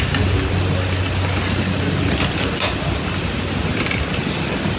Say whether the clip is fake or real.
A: real